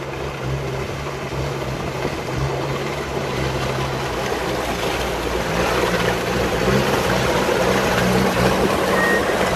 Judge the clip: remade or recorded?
recorded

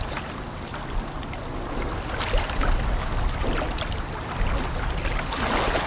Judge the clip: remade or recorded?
recorded